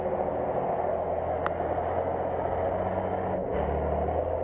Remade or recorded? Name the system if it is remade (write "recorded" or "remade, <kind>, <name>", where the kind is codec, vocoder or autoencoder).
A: recorded